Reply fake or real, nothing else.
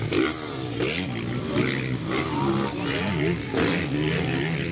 real